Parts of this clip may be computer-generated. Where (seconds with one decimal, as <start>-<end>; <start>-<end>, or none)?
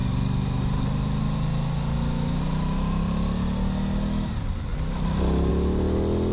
none